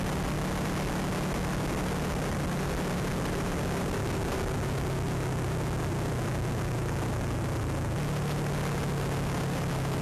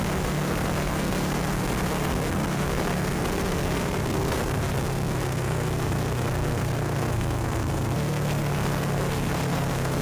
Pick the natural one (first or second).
first